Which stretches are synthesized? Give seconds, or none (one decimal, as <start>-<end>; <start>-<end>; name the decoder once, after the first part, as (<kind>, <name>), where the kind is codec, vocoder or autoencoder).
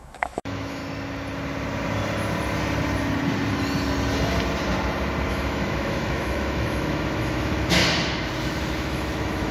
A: 0.0-0.8 (autoencoder, DAC-VAE); 5.3-7.8; 8.4-9.5